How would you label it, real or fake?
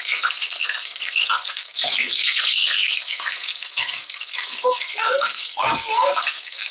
fake